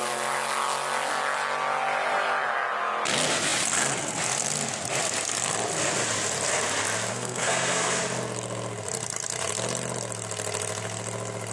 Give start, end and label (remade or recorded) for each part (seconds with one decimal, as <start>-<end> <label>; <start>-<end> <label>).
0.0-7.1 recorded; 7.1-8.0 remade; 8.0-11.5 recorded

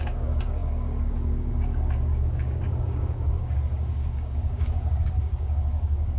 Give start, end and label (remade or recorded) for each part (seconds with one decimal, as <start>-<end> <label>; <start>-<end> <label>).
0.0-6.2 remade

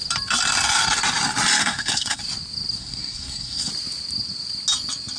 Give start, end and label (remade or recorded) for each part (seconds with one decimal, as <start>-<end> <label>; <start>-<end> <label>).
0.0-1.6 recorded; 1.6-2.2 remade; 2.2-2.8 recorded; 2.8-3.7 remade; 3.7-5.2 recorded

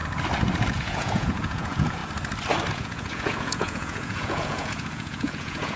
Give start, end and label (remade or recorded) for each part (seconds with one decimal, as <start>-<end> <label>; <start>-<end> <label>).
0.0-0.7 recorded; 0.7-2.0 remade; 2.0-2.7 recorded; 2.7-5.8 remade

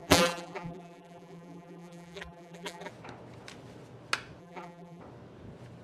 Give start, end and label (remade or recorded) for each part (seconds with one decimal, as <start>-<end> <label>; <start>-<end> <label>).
0.0-2.9 remade; 2.9-4.4 recorded; 4.4-5.0 remade; 5.0-5.8 recorded

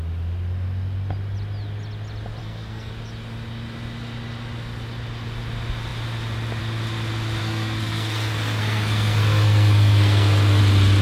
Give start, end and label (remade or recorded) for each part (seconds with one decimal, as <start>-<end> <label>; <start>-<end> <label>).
0.0-2.4 recorded; 2.4-2.9 remade; 2.9-7.4 recorded; 7.4-10.6 remade; 10.6-11.0 recorded

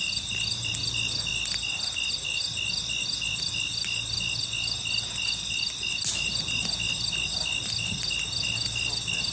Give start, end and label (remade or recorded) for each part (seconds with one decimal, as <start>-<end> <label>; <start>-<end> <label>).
0.0-9.3 recorded